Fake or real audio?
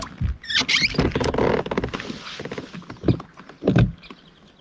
real